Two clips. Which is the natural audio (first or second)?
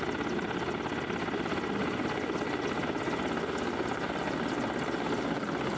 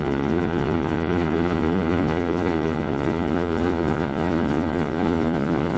first